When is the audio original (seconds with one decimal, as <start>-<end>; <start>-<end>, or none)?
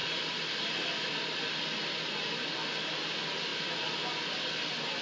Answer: 0.0-5.0